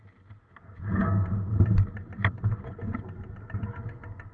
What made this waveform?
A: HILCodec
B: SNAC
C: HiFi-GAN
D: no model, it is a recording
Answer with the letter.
D